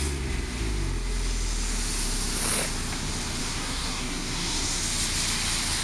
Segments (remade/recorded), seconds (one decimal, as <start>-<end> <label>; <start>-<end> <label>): 0.0-3.4 recorded; 3.4-4.8 remade; 4.8-5.8 recorded